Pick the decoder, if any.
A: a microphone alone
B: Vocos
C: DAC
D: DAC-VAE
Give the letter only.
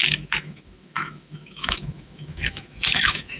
D